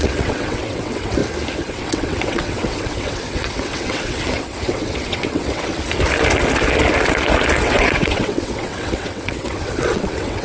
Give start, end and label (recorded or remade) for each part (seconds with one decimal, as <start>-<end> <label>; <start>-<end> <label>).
0.0-1.2 remade; 1.2-1.7 recorded; 1.7-5.7 remade; 5.7-7.6 recorded; 7.6-10.4 remade